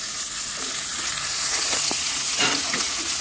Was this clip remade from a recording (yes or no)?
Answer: yes